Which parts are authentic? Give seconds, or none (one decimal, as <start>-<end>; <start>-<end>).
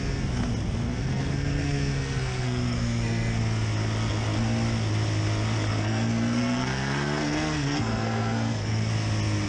0.0-1.0; 3.4-5.7; 8.9-9.5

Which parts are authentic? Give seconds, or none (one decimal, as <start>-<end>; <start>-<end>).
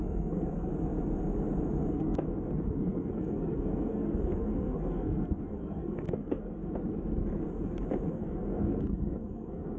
0.7-1.9; 6.6-8.1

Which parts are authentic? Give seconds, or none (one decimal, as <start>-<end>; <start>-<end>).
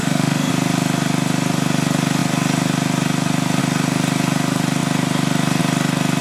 0.5-6.2